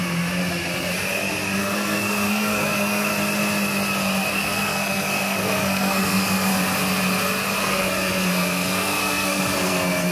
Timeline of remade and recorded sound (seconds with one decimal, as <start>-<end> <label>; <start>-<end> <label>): 0.0-1.6 recorded; 1.6-3.1 remade; 3.1-4.3 recorded; 4.3-6.5 remade; 6.5-7.6 recorded; 7.6-10.1 remade